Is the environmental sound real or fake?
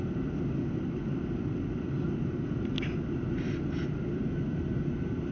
real